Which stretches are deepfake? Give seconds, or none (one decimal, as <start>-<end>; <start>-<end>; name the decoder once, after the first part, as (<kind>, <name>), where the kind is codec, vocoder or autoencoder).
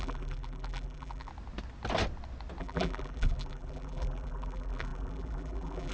0.0-1.3 (vocoder, BigVGAN v2); 2.6-5.9